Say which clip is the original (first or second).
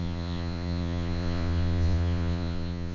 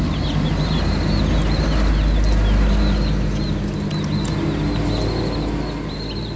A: second